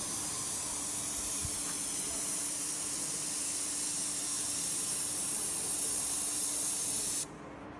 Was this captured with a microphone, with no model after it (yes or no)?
no